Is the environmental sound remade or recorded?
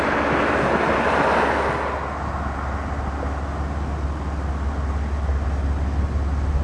recorded